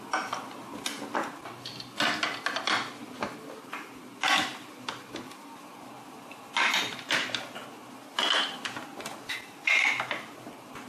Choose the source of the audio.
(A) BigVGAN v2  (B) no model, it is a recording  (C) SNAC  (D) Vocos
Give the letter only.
B